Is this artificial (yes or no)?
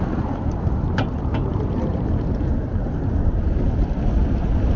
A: no